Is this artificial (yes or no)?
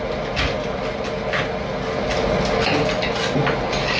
no